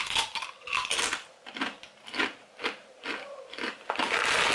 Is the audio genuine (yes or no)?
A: yes